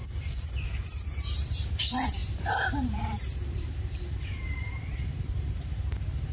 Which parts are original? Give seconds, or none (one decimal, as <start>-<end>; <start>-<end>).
none